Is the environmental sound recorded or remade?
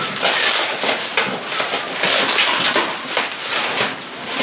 recorded